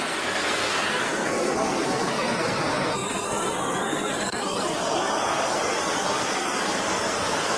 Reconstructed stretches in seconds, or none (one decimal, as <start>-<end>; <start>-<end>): 0.0-7.6